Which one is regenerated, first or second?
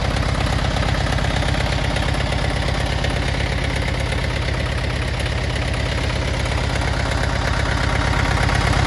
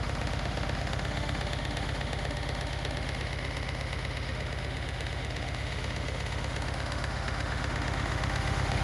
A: second